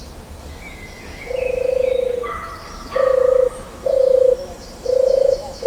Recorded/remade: remade